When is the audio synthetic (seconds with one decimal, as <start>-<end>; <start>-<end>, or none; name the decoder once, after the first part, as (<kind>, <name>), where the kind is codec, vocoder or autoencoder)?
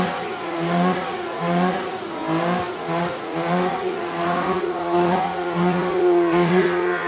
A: 0.0-2.2 (vocoder, Vocos); 2.7-7.1